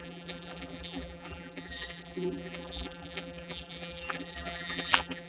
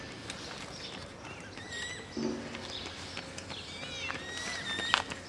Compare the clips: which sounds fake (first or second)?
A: first